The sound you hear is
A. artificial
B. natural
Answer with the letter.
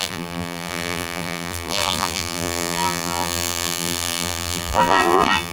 A